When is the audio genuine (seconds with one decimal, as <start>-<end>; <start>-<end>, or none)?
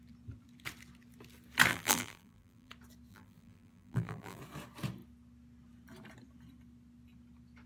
0.0-1.7; 2.7-3.1; 4.4-7.7